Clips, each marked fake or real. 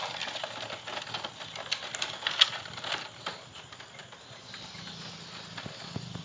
real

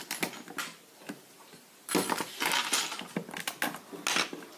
real